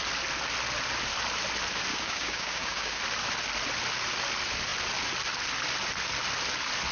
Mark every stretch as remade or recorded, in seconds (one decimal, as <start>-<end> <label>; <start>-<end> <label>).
0.0-1.9 recorded; 1.9-3.0 remade; 3.0-6.9 recorded